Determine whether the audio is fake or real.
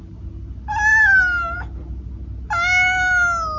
real